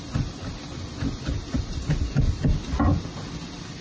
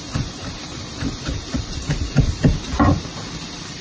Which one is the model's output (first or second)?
second